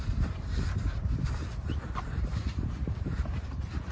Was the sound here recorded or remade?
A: remade